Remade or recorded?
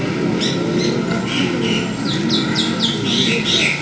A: recorded